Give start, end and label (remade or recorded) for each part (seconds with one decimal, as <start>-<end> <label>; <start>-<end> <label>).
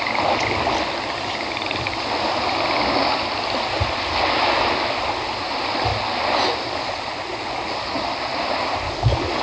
0.0-9.4 recorded